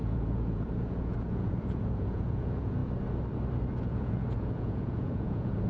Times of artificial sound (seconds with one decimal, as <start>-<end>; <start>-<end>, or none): 0.0-2.8; 3.8-5.7